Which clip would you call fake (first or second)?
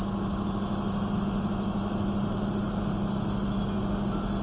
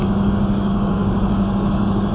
second